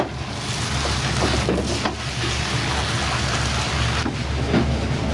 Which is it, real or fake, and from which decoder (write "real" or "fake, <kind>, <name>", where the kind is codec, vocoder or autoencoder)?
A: real